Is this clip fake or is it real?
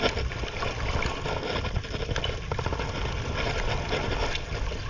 real